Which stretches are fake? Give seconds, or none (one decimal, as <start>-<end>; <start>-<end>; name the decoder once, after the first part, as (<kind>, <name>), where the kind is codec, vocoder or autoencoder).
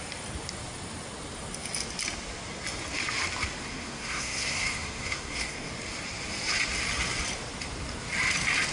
3.6-5.7 (codec, SNAC)